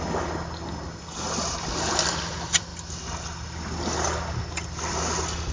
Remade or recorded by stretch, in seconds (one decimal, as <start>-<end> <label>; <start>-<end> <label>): 0.0-5.5 recorded